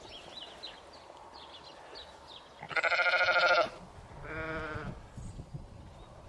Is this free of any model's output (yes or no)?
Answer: yes